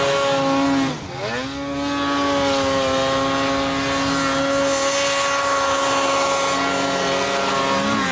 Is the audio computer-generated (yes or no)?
no